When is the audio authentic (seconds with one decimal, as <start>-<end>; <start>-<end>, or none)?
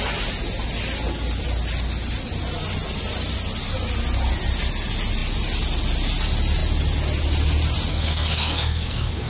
0.0-7.9